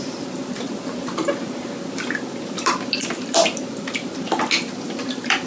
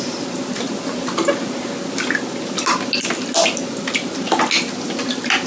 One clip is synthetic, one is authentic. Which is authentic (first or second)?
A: second